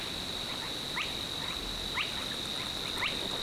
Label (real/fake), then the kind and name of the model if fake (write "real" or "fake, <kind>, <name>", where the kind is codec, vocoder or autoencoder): real